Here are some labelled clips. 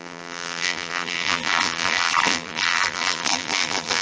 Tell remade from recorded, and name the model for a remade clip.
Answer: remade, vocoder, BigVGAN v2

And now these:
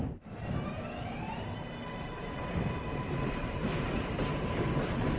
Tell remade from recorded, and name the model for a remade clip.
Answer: remade, vocoder, BigVGAN v2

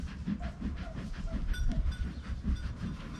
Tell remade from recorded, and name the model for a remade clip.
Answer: remade, vocoder, BigVGAN v2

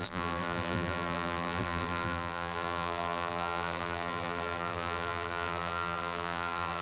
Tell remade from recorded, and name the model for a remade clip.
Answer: remade, vocoder, BigVGAN v2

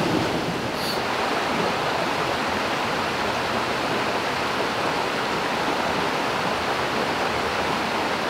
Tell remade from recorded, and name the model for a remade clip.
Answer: recorded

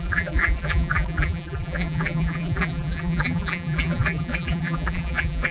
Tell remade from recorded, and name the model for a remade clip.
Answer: remade, vocoder, BigVGAN v2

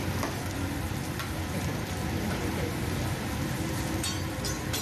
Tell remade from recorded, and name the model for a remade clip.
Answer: remade, vocoder, BigVGAN v2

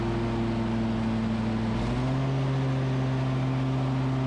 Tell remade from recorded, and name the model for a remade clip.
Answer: recorded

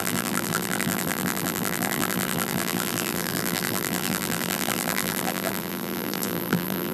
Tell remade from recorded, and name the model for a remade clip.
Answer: remade, vocoder, BigVGAN v2